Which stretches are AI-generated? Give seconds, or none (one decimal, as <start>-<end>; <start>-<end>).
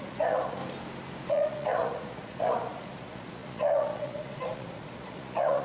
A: 0.0-0.6; 1.3-5.6